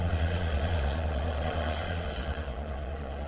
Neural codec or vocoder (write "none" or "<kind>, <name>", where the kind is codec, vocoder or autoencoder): vocoder, Vocos